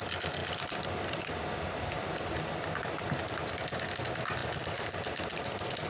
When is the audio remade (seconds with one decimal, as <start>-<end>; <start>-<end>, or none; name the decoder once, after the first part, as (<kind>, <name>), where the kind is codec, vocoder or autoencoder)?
none

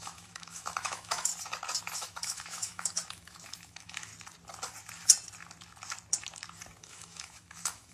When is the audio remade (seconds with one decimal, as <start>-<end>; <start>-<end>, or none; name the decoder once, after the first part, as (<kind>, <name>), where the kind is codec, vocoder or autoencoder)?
0.0-1.3 (autoencoder, DAC-VAE); 1.8-4.1; 6.8-7.9

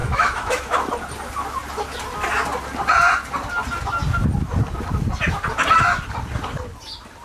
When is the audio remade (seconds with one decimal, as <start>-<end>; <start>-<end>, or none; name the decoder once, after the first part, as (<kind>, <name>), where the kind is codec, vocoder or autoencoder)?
0.0-0.9 (autoencoder, DAC-VAE)

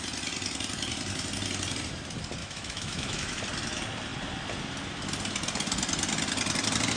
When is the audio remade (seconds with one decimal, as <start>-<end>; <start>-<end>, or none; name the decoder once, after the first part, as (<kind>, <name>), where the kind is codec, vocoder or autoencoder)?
2.4-3.4 (autoencoder, DAC-VAE)

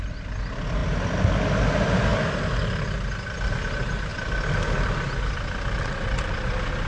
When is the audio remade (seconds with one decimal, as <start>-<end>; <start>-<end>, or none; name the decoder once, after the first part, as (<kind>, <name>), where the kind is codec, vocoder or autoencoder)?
none